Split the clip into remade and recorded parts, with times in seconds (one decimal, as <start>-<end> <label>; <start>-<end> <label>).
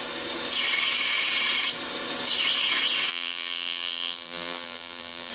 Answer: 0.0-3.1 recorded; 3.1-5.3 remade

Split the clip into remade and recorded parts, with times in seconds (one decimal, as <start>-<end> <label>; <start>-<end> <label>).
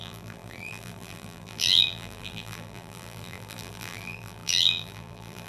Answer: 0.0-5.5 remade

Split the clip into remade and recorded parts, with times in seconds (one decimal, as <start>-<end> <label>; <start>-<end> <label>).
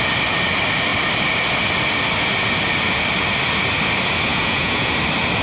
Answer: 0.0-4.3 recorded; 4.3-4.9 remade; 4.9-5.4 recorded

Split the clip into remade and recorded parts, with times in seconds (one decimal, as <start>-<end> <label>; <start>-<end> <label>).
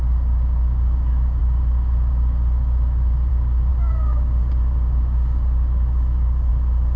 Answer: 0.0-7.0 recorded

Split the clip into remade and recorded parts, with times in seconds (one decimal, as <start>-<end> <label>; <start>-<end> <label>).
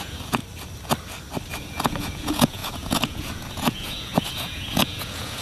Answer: 0.0-0.4 remade; 0.4-1.5 recorded; 1.5-5.4 remade